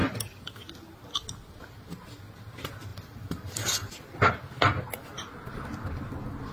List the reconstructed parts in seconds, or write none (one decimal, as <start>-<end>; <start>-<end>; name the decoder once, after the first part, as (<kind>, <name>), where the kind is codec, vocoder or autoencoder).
2.9-4.3 (vocoder, BigVGAN v2)